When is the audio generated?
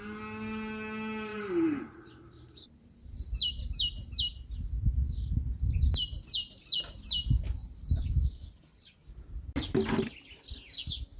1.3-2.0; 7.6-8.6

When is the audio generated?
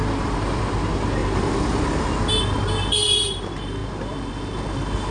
0.0-0.6; 1.2-1.8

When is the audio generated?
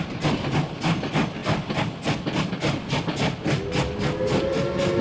none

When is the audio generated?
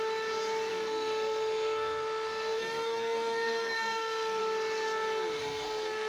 0.7-4.4; 5.4-6.1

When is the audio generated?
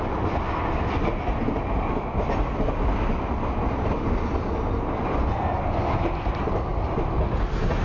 none